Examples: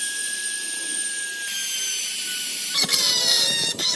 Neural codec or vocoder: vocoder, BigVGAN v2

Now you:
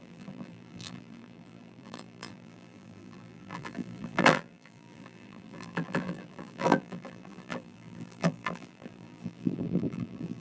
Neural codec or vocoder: vocoder, BigVGAN v2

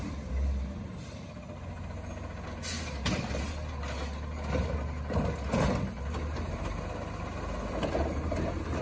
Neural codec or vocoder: none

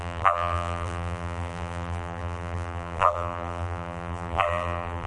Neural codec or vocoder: vocoder, BigVGAN v2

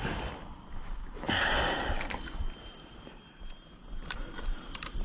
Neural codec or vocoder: vocoder, BigVGAN v2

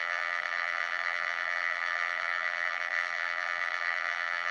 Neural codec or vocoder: vocoder, BigVGAN v2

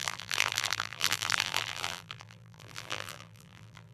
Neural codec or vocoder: vocoder, BigVGAN v2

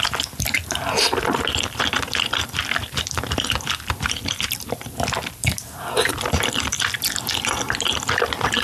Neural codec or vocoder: vocoder, BigVGAN v2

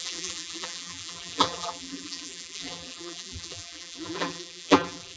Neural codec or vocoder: vocoder, BigVGAN v2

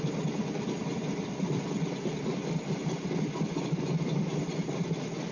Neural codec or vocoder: vocoder, BigVGAN v2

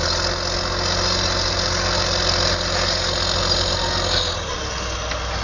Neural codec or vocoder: none